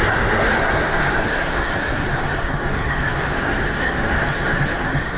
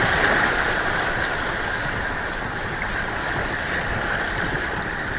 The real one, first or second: second